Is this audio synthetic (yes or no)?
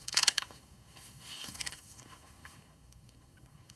yes